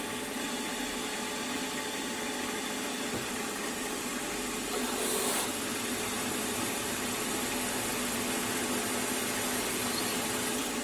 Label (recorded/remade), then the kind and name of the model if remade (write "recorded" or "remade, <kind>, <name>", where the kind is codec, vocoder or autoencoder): recorded